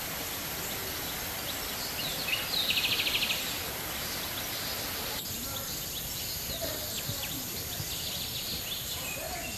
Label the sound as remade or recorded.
recorded